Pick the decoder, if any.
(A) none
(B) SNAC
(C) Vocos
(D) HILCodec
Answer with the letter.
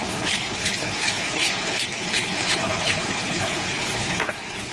D